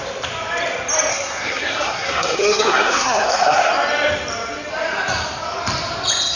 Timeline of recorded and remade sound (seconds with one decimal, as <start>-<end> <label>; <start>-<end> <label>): 0.0-1.1 recorded; 1.1-3.7 remade; 3.7-6.4 recorded